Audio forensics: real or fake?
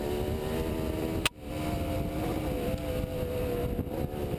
real